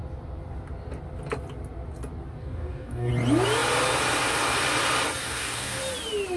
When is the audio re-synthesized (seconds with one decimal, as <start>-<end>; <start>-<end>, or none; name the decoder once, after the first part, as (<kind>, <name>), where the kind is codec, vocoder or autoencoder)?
2.4-3.1 (codec, DAC); 5.2-5.8